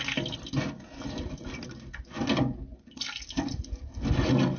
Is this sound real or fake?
real